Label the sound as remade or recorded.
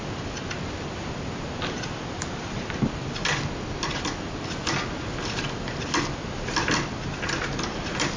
recorded